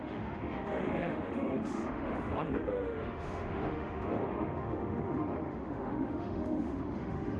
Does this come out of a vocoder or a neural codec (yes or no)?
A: yes